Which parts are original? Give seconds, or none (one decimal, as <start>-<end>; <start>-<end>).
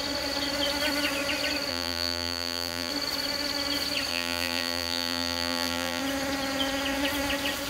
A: 0.0-1.7; 2.9-4.1; 6.0-7.7